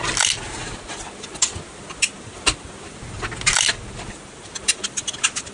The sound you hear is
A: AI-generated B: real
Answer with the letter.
B